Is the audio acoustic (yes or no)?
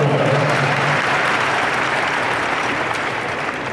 no